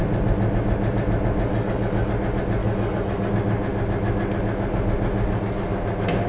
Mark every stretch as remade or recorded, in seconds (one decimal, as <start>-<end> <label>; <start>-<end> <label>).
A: 0.0-1.5 recorded; 1.5-2.1 remade; 2.1-2.6 recorded; 2.6-3.3 remade; 3.3-6.3 recorded